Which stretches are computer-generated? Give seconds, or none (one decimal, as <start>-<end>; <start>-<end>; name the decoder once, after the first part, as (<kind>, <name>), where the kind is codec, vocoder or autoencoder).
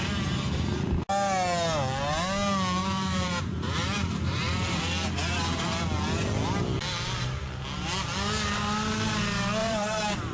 2.8-4.8 (vocoder, BigVGAN v2); 9.6-10.3